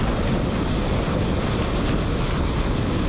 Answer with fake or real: real